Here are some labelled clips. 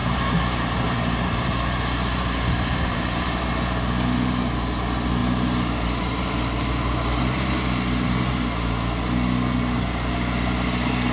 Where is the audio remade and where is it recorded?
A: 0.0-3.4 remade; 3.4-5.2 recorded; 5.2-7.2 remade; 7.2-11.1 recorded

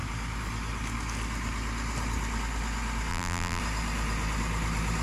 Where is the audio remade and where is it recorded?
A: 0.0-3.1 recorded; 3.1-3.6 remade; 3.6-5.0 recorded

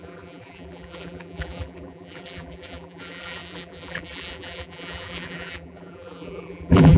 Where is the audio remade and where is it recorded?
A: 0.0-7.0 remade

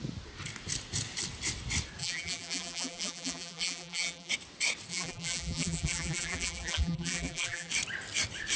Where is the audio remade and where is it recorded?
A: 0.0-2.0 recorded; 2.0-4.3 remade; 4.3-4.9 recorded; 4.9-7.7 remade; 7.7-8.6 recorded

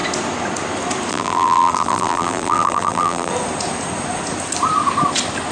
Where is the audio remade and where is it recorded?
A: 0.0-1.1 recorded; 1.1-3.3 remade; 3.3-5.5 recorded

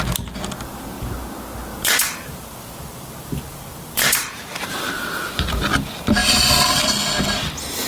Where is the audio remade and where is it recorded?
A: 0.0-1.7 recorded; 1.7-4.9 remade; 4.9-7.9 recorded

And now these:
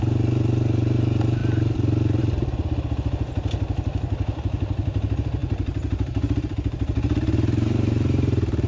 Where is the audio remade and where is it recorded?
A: 0.0-5.4 recorded; 5.4-8.7 remade